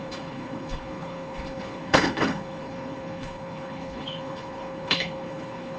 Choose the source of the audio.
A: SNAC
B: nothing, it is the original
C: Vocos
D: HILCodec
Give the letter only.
D